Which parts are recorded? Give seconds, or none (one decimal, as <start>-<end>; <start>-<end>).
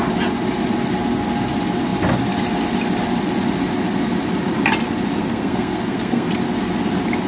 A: 0.0-5.2; 6.3-7.3